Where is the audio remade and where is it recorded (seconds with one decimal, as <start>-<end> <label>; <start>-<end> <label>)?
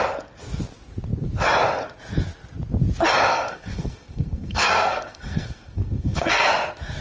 0.0-3.3 recorded; 3.3-6.5 remade; 6.5-7.0 recorded